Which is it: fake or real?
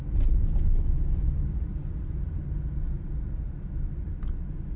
real